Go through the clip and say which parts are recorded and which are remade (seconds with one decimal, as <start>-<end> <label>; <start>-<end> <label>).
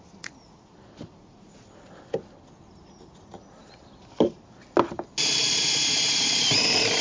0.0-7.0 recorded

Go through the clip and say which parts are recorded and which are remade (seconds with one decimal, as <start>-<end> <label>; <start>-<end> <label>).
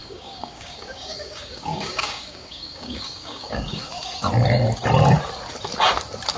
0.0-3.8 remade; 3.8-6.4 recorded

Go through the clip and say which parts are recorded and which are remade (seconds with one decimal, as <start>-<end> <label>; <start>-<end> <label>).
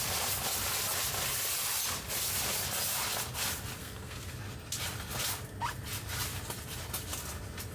0.0-3.8 recorded; 3.8-4.3 remade; 4.3-7.7 recorded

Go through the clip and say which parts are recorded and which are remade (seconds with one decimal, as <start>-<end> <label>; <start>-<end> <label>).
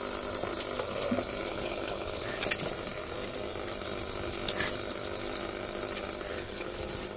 0.0-1.5 recorded; 1.5-2.4 remade; 2.4-6.3 recorded; 6.3-6.8 remade; 6.8-7.2 recorded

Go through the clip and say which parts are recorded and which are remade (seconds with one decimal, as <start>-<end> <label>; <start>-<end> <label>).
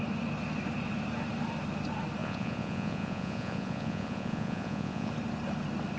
0.0-2.2 recorded; 2.2-5.1 remade; 5.1-6.0 recorded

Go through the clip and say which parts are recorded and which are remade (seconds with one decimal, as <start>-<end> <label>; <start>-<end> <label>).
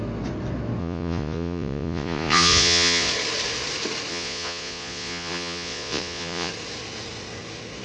0.0-0.8 recorded; 0.8-3.1 remade; 3.1-4.1 recorded; 4.1-6.5 remade; 6.5-7.8 recorded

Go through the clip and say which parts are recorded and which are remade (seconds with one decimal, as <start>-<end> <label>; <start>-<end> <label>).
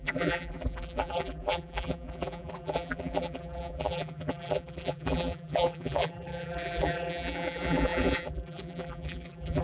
0.0-9.6 remade